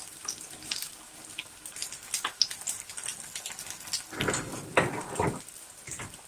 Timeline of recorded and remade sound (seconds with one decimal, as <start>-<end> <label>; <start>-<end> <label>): 0.0-1.8 remade; 1.8-5.6 recorded; 5.6-6.3 remade